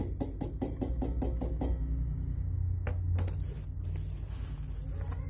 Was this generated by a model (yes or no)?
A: no